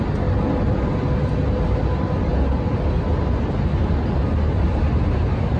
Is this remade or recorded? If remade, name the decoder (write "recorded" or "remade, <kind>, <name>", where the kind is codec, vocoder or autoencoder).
recorded